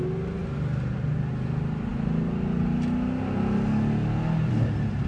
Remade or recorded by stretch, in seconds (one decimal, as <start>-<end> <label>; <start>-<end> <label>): 0.0-5.1 recorded